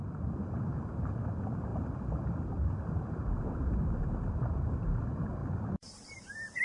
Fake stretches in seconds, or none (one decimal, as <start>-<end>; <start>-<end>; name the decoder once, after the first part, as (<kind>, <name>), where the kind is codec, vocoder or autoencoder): 5.4-6.6 (vocoder, BigVGAN v2)